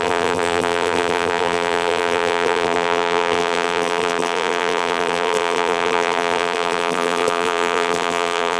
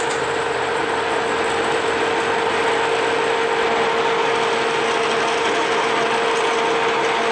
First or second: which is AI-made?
first